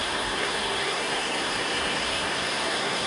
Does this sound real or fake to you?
fake